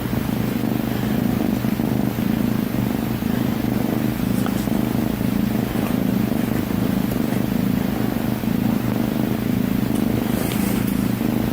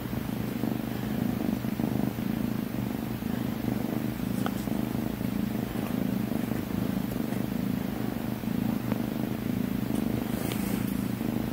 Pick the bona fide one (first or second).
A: first